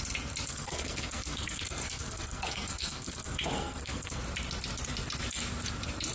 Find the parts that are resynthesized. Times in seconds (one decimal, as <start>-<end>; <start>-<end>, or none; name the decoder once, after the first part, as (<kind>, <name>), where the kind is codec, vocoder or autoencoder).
0.5-4.2 (codec, SNAC)